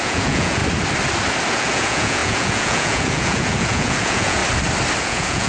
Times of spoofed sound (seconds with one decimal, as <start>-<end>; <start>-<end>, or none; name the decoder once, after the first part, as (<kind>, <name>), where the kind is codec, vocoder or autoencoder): 0.0-0.6 (vocoder, Vocos); 1.5-4.4; 5.0-5.5